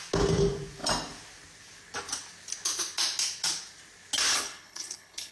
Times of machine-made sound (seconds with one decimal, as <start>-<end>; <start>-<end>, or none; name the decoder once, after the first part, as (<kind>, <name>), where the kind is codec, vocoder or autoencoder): 4.3-5.3 (codec, HILCodec)